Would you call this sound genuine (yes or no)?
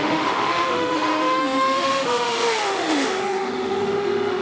no